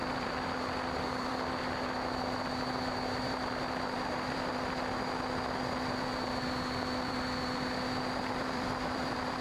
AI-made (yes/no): yes